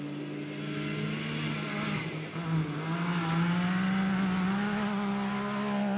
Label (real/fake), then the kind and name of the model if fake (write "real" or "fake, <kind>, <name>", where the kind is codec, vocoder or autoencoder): real